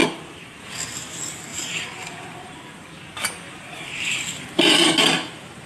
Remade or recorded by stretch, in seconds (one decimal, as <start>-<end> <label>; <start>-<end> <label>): 0.0-0.6 remade; 0.6-1.5 recorded; 1.5-4.9 remade; 4.9-5.7 recorded